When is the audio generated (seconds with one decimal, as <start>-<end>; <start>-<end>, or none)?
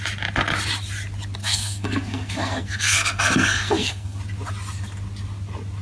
1.4-4.2